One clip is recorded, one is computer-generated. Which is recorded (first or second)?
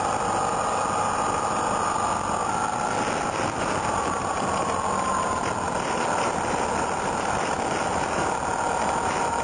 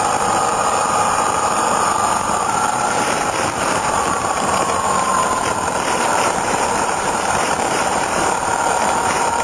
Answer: first